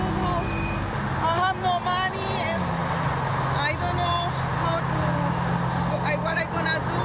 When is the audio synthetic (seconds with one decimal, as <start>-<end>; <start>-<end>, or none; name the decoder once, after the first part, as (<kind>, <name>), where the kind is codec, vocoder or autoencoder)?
none